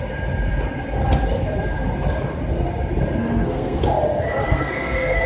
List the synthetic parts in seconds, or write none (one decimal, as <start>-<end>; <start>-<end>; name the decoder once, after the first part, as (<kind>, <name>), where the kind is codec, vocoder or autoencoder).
3.2-3.8 (codec, SNAC); 4.4-5.3